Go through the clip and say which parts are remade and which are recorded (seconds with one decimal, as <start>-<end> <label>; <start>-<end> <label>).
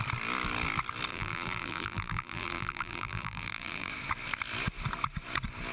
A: 0.0-1.1 recorded; 1.1-3.9 remade; 3.9-5.7 recorded